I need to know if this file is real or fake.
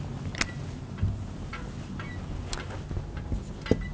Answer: real